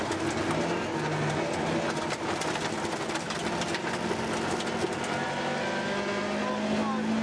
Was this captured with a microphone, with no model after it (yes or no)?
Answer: yes